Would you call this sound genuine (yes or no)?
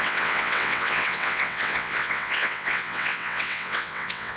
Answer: no